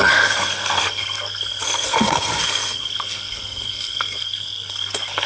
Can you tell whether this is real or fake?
fake